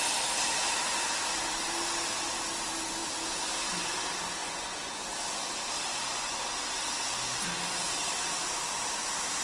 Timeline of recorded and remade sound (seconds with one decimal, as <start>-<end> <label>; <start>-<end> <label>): 0.0-4.4 recorded; 4.4-5.0 remade; 5.0-5.9 recorded; 5.9-6.4 remade; 6.4-9.4 recorded